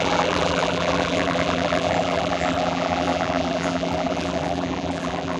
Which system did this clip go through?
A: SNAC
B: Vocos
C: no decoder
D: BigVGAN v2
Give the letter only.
D